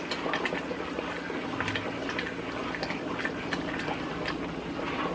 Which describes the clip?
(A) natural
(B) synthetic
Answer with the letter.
A